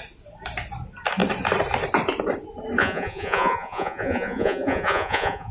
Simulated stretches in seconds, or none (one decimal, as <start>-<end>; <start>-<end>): 2.8-5.5